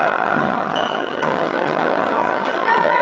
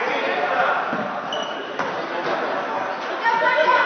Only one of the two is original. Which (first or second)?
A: second